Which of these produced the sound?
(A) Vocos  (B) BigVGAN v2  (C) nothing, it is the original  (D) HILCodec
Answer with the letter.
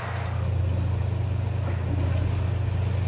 C